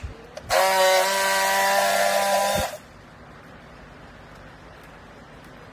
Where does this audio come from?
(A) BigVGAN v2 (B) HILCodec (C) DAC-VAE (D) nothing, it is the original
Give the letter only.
D